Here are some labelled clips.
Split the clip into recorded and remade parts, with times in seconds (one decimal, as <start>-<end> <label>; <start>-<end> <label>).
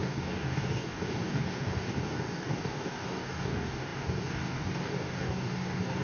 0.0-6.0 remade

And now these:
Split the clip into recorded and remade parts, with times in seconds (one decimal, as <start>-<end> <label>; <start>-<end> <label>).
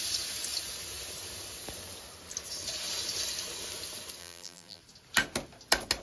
0.0-4.2 recorded; 4.2-4.8 remade; 4.8-6.0 recorded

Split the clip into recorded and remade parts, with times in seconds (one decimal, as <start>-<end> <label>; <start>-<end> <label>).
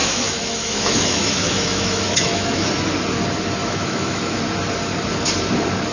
0.0-2.7 remade; 2.7-3.6 recorded; 3.6-4.4 remade; 4.4-5.9 recorded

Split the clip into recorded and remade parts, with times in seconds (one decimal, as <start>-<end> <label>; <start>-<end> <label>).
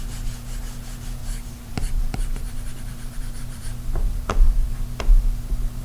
0.0-1.2 recorded; 1.2-4.7 remade; 4.7-5.8 recorded